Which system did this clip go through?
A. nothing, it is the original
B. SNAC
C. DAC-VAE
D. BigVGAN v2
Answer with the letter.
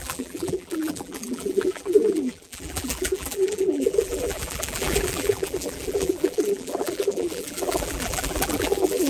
D